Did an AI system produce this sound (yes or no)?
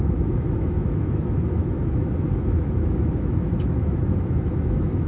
yes